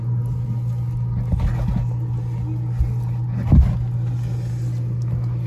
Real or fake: real